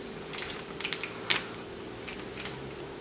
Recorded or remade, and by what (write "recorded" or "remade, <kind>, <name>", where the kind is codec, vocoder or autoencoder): recorded